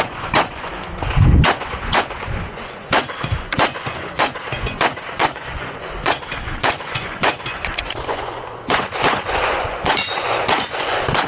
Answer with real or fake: fake